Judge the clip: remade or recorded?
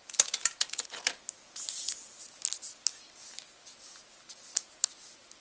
recorded